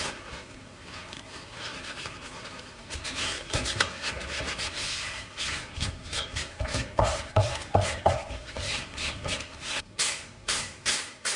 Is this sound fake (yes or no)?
yes